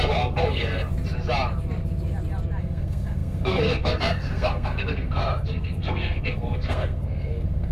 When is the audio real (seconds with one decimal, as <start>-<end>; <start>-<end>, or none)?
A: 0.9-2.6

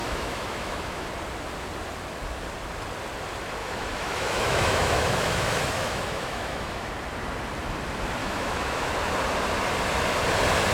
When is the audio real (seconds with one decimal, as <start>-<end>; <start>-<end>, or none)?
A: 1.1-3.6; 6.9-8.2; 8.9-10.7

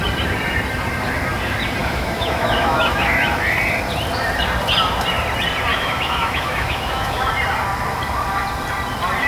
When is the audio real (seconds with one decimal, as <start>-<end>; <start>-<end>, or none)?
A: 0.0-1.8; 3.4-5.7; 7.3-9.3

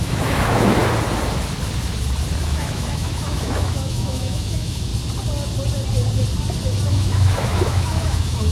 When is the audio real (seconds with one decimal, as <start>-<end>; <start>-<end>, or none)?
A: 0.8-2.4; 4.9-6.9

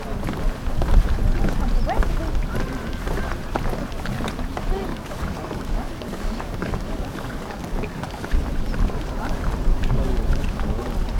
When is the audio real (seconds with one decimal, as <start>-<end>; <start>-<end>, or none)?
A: 0.0-4.9; 8.3-9.7; 10.3-11.2

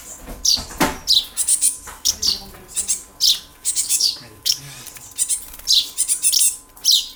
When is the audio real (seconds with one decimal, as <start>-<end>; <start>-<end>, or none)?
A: 0.0-1.5; 2.1-3.5; 4.6-7.2